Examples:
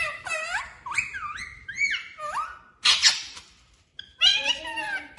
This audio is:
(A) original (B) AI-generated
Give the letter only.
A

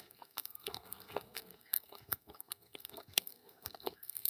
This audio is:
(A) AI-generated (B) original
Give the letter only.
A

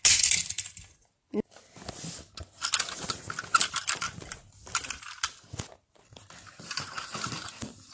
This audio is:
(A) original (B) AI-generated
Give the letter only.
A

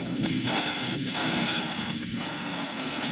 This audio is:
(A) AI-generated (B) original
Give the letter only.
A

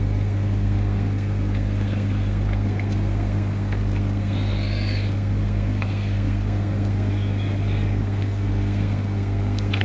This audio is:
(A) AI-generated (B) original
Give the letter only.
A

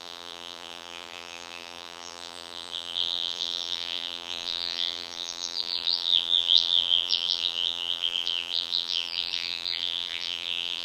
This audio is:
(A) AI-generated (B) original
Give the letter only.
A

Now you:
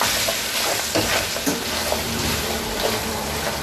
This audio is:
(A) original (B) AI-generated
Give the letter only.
A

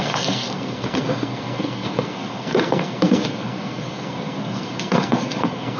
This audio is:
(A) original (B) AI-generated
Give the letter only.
B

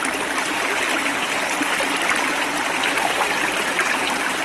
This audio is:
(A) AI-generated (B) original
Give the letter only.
B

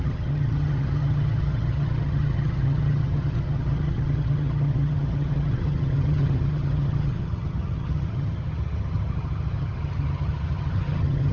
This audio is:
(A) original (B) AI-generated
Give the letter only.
B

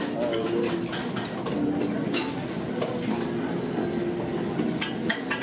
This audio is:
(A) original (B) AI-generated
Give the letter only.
A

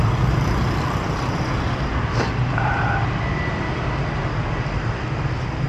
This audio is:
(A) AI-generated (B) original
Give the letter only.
B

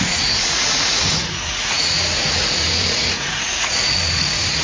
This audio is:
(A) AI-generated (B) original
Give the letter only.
A